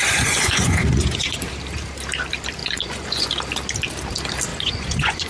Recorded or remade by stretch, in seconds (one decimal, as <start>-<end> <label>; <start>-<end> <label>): 0.0-1.4 remade; 1.4-2.6 recorded; 2.6-3.3 remade; 3.3-4.5 recorded; 4.5-5.3 remade